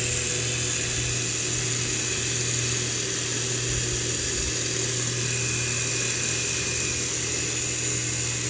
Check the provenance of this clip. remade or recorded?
recorded